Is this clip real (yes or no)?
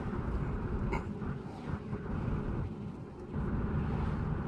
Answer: yes